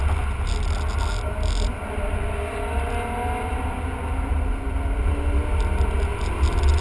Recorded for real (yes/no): yes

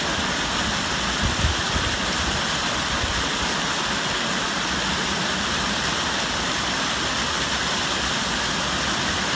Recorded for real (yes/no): yes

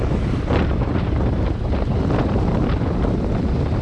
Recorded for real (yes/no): yes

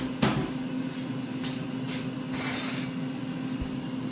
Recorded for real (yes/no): yes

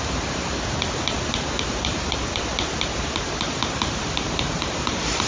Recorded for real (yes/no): no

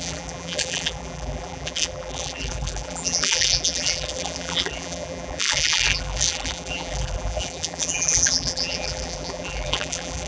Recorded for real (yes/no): no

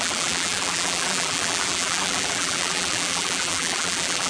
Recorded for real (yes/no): no